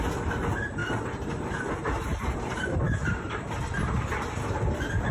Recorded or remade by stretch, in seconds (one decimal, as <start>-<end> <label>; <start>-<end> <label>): 0.0-0.8 recorded; 0.8-3.9 remade; 3.9-5.1 recorded